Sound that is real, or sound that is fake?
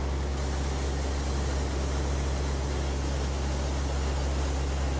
real